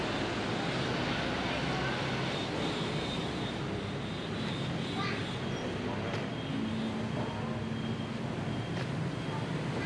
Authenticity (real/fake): real